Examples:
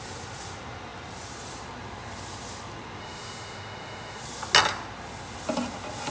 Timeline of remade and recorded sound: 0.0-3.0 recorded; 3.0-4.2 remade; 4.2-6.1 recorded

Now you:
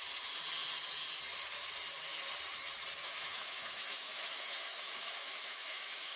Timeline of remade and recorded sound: 0.0-3.0 recorded; 3.0-6.2 remade

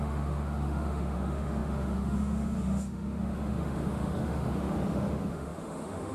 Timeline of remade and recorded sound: 0.0-6.1 remade

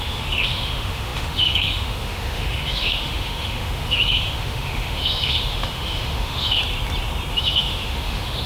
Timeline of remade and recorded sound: 0.0-6.6 remade; 6.6-7.3 recorded; 7.3-8.5 remade

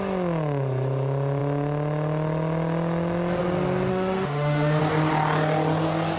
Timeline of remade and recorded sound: 0.0-3.9 recorded; 3.9-4.8 remade; 4.8-6.2 recorded